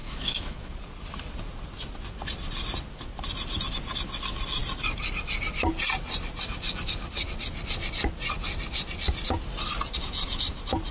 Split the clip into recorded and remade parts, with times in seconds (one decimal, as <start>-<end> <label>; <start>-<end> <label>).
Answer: 0.0-0.7 remade; 0.7-10.9 recorded